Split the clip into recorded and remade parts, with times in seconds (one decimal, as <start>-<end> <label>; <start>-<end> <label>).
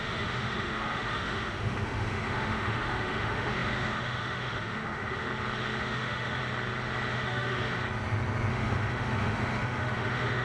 0.0-5.3 remade; 5.3-5.8 recorded; 5.8-6.4 remade; 6.4-7.1 recorded; 7.1-7.8 remade; 7.8-8.5 recorded; 8.5-10.4 remade